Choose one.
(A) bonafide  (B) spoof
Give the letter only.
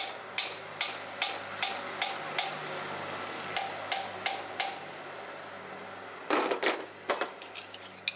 A